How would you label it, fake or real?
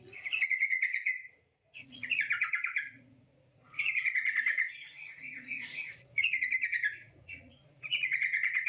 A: fake